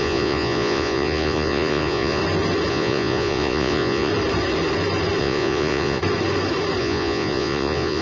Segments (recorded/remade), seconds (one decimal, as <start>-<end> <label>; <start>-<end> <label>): 0.0-2.2 remade; 2.2-2.7 recorded; 2.7-4.1 remade; 4.1-5.2 recorded; 5.2-6.0 remade; 6.0-6.8 recorded; 6.8-8.0 remade